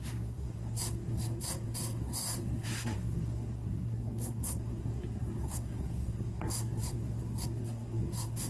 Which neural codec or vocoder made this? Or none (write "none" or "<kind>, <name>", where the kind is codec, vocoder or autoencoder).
codec, SNAC